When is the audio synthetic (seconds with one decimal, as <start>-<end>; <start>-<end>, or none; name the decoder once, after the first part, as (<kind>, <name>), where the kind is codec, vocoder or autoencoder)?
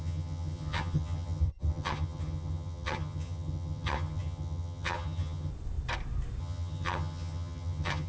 0.0-5.5 (vocoder, HiFi-GAN); 6.4-8.1